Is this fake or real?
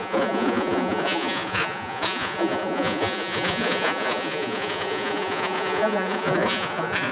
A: fake